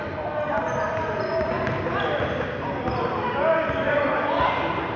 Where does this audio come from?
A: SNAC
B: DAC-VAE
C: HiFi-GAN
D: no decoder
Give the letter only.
D